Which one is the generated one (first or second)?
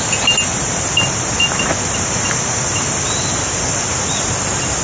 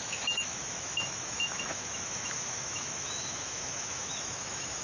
second